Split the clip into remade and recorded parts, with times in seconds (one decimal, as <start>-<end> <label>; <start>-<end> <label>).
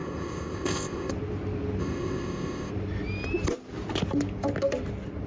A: 0.0-1.1 remade; 1.1-1.8 recorded; 1.8-2.7 remade; 2.7-5.3 recorded